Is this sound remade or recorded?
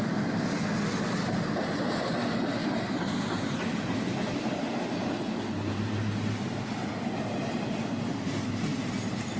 recorded